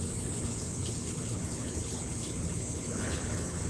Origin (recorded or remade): remade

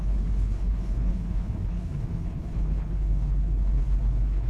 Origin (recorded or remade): remade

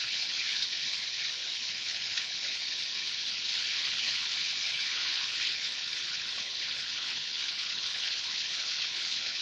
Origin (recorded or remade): remade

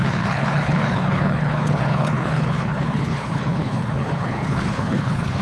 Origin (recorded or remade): remade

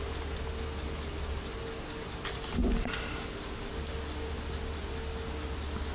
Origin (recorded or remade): recorded